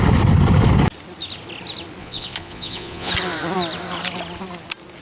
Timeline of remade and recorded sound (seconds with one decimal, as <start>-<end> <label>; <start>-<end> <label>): 0.0-2.0 recorded; 2.0-3.1 remade; 3.1-5.0 recorded